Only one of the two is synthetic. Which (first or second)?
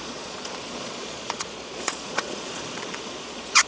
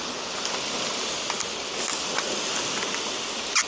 first